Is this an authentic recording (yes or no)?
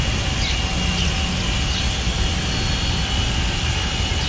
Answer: yes